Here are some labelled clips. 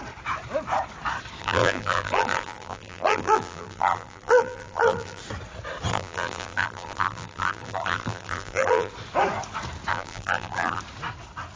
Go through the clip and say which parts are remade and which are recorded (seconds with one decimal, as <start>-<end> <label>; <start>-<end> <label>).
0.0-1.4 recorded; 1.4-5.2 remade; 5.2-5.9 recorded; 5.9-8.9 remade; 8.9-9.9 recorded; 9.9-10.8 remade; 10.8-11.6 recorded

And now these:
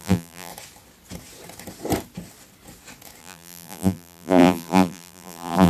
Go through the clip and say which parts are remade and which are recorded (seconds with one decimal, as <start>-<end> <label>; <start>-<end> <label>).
0.0-0.5 remade; 0.5-3.2 recorded; 3.2-5.7 remade

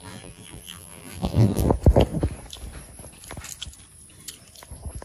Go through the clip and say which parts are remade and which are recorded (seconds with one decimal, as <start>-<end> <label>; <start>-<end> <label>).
0.0-1.7 remade; 1.7-5.0 recorded

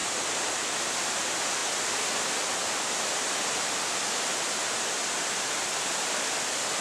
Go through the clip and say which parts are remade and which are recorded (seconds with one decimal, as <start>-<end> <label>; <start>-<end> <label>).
0.0-1.6 remade; 1.6-5.7 recorded; 5.7-6.8 remade

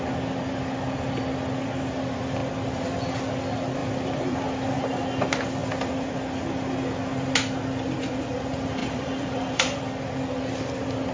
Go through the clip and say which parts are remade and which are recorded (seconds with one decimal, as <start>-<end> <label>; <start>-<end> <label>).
0.0-3.8 recorded; 3.8-4.4 remade; 4.4-5.6 recorded; 5.6-6.1 remade; 6.1-8.8 recorded; 8.8-9.8 remade; 9.8-11.1 recorded

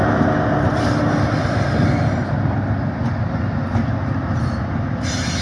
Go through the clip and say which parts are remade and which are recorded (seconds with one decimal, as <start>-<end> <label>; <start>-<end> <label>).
0.0-5.4 recorded

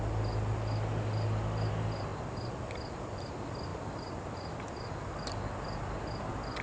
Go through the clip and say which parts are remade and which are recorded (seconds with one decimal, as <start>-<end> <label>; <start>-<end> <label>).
0.0-3.7 recorded; 3.7-5.1 remade; 5.1-6.6 recorded